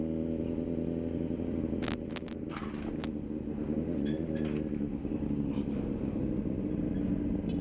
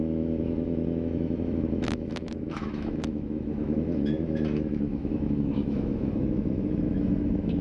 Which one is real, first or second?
first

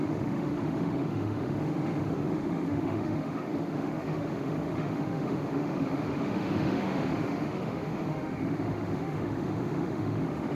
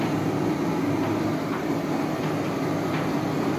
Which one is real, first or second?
second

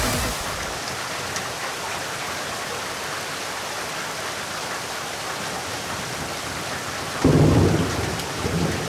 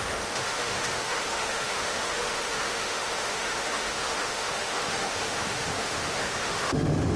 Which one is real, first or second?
first